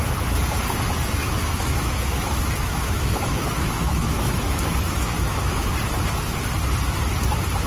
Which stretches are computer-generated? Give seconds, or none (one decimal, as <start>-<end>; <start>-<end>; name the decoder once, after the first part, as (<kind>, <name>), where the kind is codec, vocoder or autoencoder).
1.2-5.7 (autoencoder, DAC-VAE)